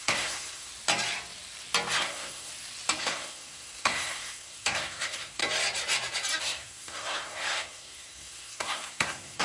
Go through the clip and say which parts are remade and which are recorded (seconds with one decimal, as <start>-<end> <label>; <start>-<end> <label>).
0.0-0.7 remade; 0.7-2.0 recorded; 2.0-2.5 remade; 2.5-3.0 recorded; 3.0-5.4 remade; 5.4-6.4 recorded; 6.4-9.4 remade